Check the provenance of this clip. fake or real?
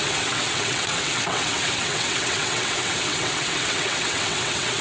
fake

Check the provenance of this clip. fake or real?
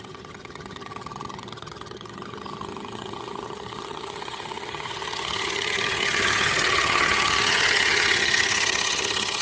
fake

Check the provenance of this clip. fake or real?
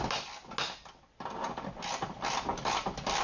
real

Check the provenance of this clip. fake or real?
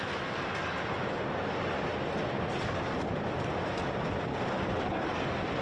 real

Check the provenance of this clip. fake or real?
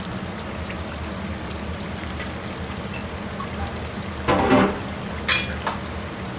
real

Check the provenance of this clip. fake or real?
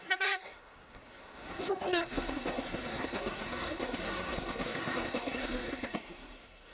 fake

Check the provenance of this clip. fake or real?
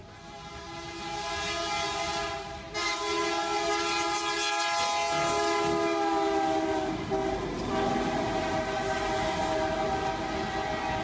real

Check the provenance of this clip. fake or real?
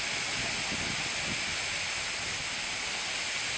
real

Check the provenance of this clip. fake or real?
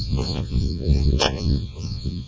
fake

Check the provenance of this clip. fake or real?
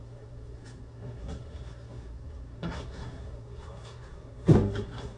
fake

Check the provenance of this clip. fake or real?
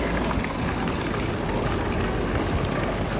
real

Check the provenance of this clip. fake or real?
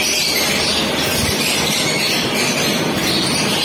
real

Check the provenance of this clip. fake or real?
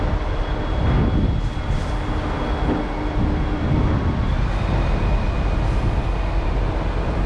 real